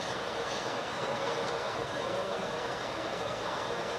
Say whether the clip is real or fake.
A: fake